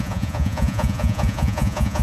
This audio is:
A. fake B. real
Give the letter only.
A